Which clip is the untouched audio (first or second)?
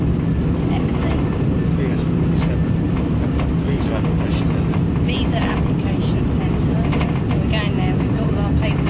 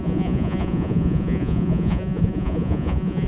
first